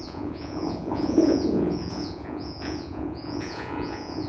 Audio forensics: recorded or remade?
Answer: remade